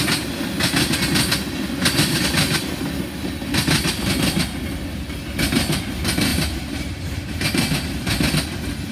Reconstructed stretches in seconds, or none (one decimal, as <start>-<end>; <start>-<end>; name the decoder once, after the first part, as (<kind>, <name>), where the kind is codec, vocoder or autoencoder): 6.3-8.3 (vocoder, BigVGAN v2)